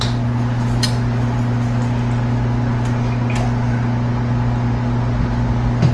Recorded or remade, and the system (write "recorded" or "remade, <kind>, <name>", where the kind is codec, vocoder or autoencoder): recorded